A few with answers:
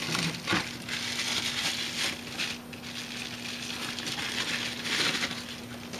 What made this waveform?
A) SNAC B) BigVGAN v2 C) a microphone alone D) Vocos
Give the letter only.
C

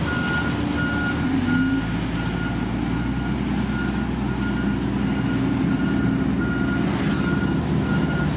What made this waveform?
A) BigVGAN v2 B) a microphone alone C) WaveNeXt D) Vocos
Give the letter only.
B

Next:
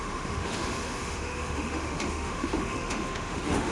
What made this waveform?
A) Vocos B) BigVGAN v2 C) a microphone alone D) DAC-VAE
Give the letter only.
D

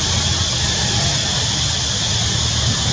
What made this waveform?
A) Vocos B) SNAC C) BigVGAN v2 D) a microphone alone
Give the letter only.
D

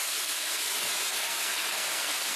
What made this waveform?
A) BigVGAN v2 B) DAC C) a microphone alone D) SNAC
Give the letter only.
D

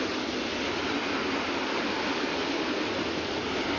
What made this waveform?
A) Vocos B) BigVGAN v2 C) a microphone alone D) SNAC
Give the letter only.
C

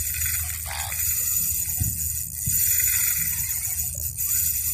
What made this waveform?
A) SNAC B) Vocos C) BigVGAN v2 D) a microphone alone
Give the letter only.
D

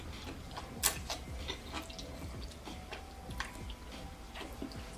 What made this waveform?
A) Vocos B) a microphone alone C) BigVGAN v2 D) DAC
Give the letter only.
B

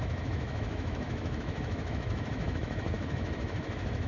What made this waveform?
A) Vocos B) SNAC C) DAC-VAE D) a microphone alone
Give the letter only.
C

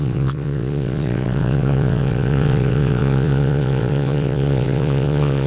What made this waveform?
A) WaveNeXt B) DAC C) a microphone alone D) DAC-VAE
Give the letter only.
A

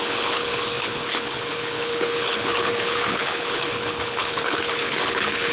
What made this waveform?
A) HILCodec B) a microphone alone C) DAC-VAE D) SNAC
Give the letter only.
A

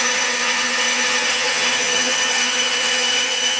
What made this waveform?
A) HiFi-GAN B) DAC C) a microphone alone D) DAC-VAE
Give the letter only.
A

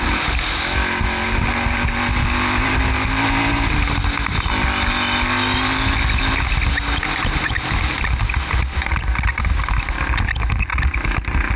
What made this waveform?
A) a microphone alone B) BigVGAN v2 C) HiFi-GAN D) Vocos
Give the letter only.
A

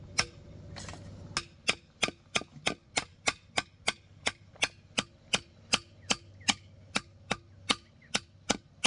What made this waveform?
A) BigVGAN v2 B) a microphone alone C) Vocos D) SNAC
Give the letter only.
B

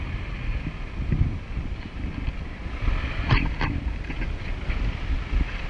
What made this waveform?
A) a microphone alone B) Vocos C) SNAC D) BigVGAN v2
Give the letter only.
A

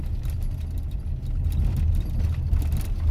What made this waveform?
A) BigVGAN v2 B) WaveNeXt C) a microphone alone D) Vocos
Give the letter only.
C